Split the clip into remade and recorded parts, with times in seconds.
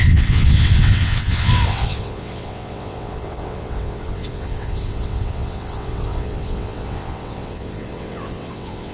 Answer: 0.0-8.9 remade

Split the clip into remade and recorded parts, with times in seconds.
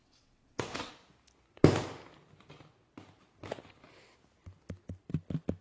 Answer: 0.0-0.9 remade; 0.9-5.6 recorded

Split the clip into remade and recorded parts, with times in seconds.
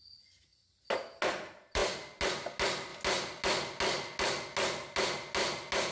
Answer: 0.0-5.9 recorded